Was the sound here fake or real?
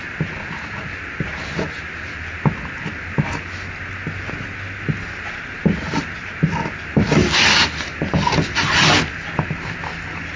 real